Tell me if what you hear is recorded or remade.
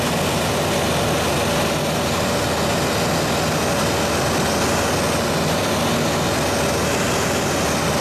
recorded